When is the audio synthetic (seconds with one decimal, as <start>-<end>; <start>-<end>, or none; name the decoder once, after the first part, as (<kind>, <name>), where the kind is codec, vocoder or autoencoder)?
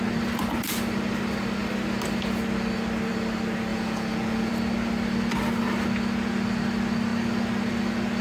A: 3.7-4.5 (vocoder, Vocos)